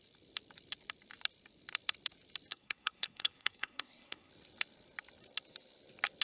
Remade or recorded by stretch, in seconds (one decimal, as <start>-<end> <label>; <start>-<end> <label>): 0.0-2.5 recorded; 2.5-4.3 remade; 4.3-6.2 recorded